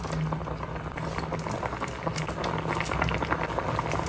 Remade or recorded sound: recorded